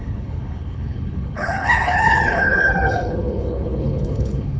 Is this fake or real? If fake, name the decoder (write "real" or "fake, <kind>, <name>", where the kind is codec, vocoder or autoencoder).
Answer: fake, codec, HILCodec